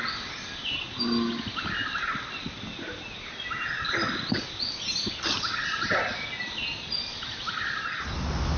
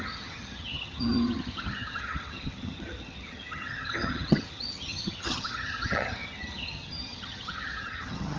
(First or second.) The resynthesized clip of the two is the second